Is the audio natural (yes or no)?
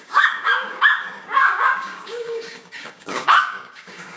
no